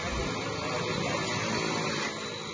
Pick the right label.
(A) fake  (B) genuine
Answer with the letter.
B